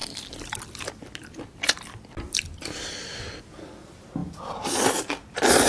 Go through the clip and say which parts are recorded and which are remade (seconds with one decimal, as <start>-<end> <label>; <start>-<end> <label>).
0.0-3.4 remade; 3.4-4.2 recorded; 4.2-5.0 remade; 5.0-5.7 recorded

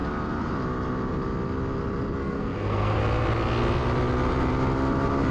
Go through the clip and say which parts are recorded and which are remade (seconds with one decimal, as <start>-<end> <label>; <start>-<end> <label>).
0.0-2.2 recorded; 2.2-3.0 remade; 3.0-5.3 recorded

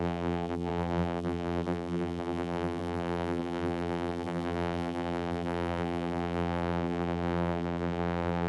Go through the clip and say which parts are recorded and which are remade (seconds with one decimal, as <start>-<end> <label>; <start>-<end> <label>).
0.0-8.5 remade

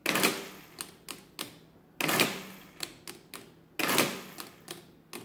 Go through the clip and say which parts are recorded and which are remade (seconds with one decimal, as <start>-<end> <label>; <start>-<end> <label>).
0.0-5.2 recorded

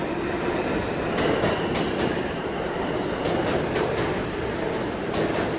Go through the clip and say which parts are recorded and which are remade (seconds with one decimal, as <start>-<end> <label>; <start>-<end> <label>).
0.0-5.6 recorded

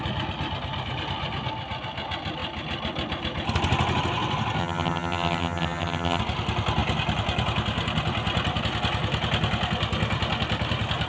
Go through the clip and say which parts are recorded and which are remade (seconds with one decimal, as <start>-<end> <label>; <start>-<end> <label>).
0.0-4.6 recorded; 4.6-6.2 remade; 6.2-11.1 recorded

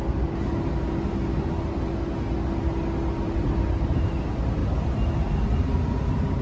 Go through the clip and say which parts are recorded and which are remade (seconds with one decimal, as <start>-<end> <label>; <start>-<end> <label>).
0.0-6.4 recorded

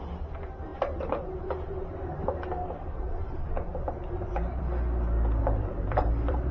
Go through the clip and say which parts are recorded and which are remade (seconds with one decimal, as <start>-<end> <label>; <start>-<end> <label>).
0.0-5.4 recorded; 5.4-6.5 remade